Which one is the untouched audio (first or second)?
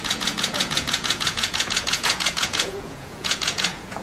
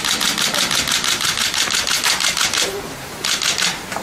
second